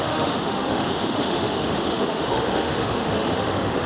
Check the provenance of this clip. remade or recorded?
remade